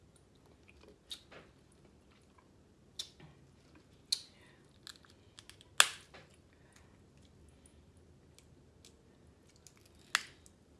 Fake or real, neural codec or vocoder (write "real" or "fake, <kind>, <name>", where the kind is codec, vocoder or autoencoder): real